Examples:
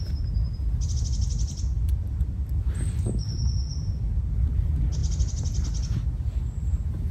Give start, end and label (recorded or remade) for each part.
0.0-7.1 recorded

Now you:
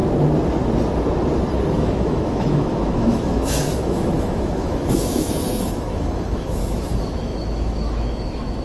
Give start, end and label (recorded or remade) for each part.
0.0-1.7 recorded; 1.7-8.6 remade

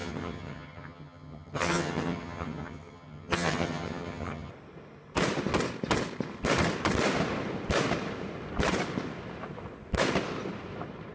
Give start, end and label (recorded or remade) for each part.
0.0-4.5 remade; 4.5-11.1 recorded